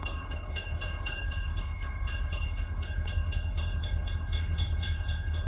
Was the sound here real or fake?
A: fake